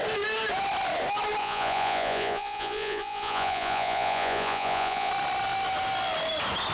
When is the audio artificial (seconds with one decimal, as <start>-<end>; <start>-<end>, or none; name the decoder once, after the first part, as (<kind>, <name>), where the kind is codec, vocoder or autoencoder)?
1.4-5.1 (vocoder, Vocos)

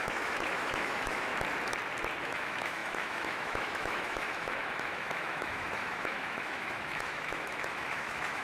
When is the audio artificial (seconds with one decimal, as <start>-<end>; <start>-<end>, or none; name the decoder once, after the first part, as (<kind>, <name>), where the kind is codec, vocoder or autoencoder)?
0.0-1.3 (autoencoder, DAC-VAE); 2.2-8.4

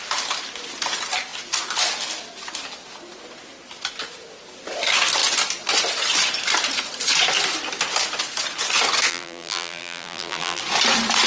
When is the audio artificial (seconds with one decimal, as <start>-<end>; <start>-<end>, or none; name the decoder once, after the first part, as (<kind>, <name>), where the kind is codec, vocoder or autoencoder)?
9.1-10.6 (vocoder, BigVGAN v2)

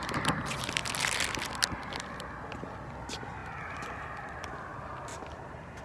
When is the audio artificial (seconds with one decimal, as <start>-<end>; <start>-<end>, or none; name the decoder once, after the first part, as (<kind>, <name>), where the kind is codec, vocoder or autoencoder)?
5.1-5.8 (vocoder, BigVGAN v2)

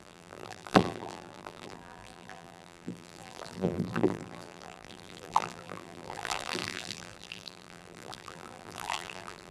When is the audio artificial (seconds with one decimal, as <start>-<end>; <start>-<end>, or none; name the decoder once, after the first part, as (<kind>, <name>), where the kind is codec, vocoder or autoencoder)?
0.0-9.5 (vocoder, BigVGAN v2)

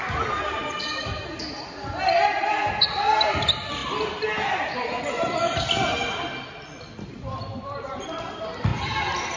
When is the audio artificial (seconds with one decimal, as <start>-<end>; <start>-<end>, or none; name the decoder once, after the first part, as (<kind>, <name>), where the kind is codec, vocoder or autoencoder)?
none

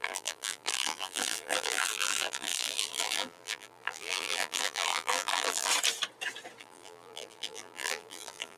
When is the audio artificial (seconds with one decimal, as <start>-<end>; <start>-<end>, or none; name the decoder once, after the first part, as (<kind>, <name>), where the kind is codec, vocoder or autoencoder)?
0.0-5.7 (vocoder, BigVGAN v2); 6.6-8.6